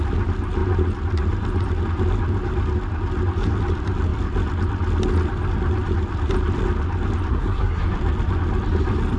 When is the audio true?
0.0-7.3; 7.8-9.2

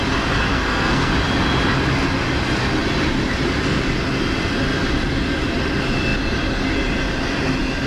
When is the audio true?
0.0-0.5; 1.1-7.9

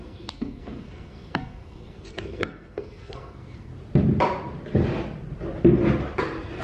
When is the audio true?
3.7-6.6

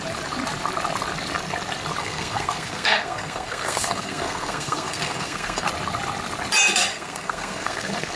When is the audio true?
0.0-2.0; 5.7-6.9